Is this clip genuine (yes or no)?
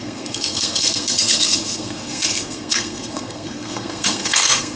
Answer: no